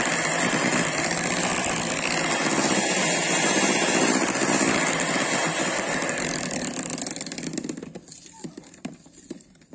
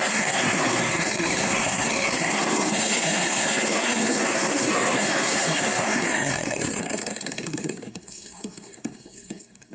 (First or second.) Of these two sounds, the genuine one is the first